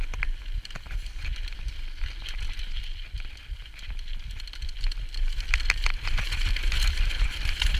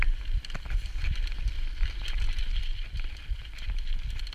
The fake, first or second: second